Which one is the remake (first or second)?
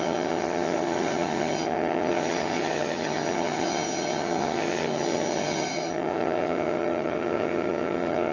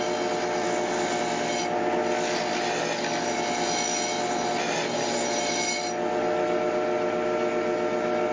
first